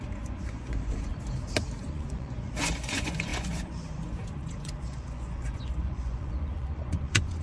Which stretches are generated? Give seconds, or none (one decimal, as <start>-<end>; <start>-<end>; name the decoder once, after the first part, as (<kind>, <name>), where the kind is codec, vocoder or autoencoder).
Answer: 0.0-1.1 (vocoder, Vocos); 1.8-7.4